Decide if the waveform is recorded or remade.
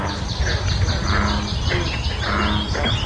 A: recorded